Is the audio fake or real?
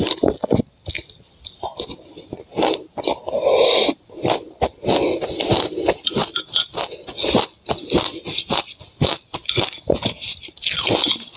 real